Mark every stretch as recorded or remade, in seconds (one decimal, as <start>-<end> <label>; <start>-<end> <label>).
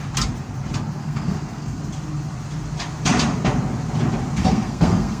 0.0-1.0 recorded; 1.0-1.8 remade; 1.8-4.4 recorded; 4.4-5.2 remade